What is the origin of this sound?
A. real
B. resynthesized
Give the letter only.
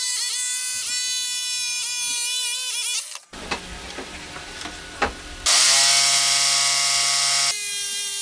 A